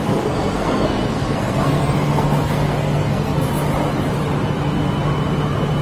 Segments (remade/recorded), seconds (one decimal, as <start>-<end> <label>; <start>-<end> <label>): 0.0-3.5 remade; 3.5-5.8 recorded